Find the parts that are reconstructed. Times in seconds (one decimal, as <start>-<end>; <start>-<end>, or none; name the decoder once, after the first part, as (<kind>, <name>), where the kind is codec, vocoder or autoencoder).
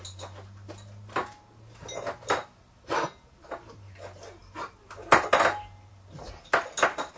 none